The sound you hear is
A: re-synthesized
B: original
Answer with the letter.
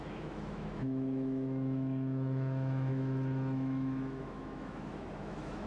A